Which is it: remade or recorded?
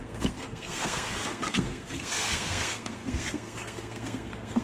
remade